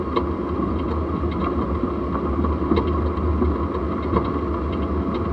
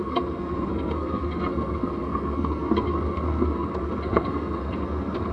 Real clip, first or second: first